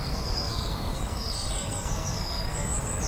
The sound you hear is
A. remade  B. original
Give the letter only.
A